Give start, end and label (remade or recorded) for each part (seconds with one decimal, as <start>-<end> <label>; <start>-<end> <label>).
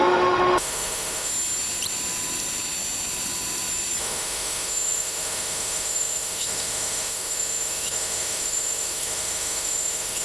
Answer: 0.0-1.3 remade; 1.3-4.0 recorded; 4.0-10.2 remade